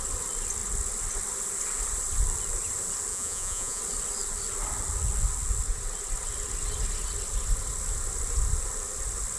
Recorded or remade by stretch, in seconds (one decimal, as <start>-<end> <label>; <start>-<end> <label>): 0.0-3.1 recorded; 3.1-3.8 remade; 3.8-9.4 recorded